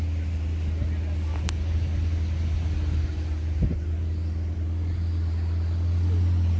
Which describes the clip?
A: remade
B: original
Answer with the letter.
B